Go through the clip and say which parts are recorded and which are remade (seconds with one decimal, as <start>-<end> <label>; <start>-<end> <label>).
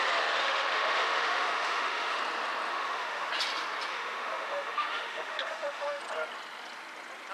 0.0-0.4 recorded; 0.4-2.2 remade; 2.2-2.7 recorded; 2.7-3.3 remade; 3.3-3.9 recorded; 3.9-6.0 remade; 6.0-7.3 recorded